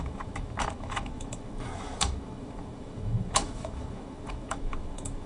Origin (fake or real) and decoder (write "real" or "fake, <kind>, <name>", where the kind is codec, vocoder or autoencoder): fake, autoencoder, DAC-VAE